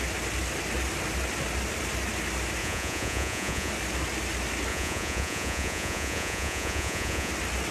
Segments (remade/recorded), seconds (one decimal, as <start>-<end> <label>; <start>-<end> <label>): 0.0-2.6 recorded; 2.6-3.7 remade; 3.7-4.7 recorded; 4.7-7.3 remade; 7.3-7.7 recorded